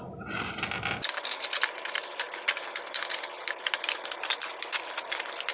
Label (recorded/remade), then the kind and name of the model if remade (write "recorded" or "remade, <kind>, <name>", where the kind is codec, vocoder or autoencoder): recorded